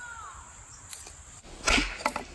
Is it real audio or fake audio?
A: real